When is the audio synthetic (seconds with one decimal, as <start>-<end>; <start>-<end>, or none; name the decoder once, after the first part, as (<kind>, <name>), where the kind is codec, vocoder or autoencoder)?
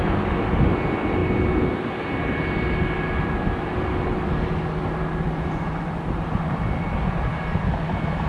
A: none